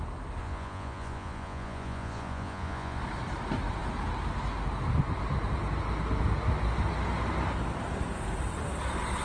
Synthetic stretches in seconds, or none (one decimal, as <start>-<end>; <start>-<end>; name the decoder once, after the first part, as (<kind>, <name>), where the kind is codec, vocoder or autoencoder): 0.4-3.0 (vocoder, Vocos)